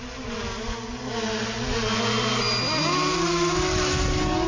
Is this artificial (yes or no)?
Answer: no